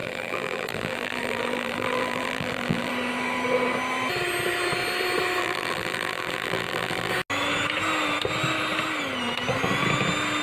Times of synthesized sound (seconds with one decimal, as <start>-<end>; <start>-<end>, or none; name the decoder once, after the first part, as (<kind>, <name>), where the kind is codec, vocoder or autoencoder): 0.0-2.9 (vocoder, BigVGAN v2); 5.4-7.1